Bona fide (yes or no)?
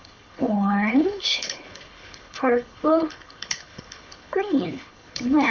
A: no